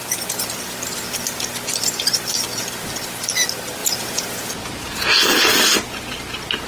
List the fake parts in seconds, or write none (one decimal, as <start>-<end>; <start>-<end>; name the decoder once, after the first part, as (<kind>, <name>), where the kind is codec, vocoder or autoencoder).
3.8-5.1 (vocoder, Vocos)